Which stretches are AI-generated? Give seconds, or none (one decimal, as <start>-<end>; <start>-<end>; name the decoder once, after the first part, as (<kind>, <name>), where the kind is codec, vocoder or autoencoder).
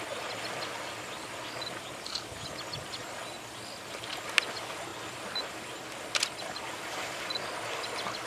none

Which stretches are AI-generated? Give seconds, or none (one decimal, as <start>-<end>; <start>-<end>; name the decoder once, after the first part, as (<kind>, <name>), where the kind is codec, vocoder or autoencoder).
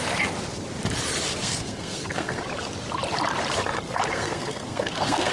1.4-2.4 (codec, SNAC); 4.1-5.3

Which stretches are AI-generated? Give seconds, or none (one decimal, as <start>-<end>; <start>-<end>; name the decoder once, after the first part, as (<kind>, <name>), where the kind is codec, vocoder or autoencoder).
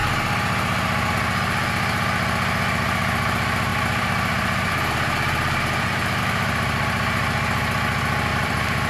3.7-6.2 (vocoder, BigVGAN v2); 8.3-8.9